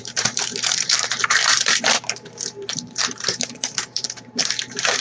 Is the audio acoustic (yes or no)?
no